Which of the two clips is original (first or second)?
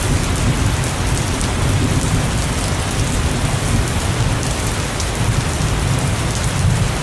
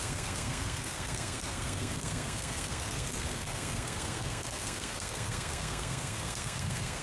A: first